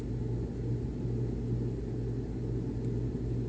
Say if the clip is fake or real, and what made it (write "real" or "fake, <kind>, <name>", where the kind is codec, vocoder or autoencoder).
real